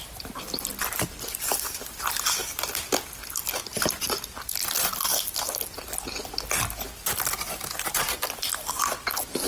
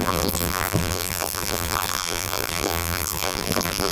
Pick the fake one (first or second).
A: second